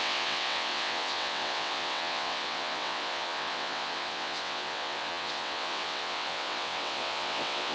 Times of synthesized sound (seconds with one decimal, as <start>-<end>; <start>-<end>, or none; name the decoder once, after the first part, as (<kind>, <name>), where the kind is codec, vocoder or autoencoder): 0.0-7.7 (vocoder, WaveNeXt)